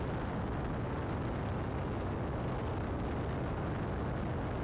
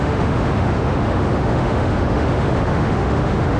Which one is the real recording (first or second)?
first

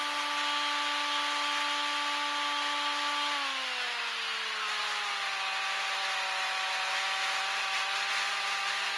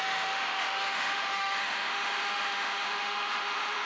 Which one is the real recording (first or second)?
first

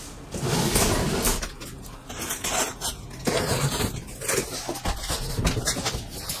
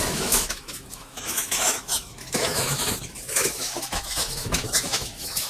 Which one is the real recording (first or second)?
first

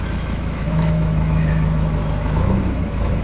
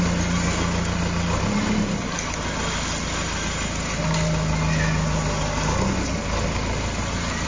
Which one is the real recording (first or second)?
second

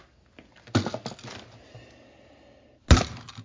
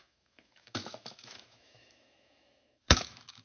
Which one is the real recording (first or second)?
first